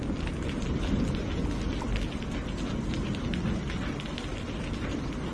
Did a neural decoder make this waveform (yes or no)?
no